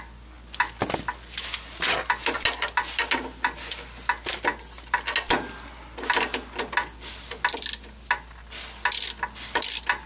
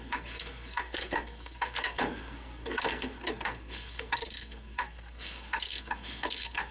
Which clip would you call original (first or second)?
first